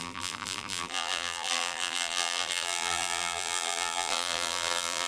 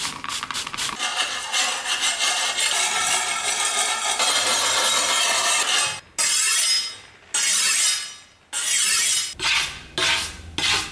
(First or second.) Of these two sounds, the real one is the second